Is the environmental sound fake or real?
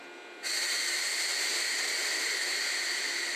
real